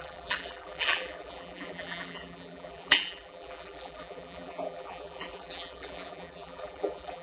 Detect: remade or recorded remade